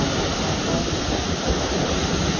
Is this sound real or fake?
real